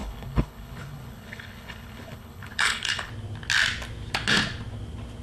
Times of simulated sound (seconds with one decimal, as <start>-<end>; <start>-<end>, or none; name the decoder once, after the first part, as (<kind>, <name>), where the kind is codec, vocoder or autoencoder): 0.0-3.1 (codec, HILCodec)